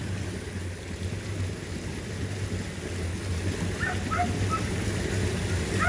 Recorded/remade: recorded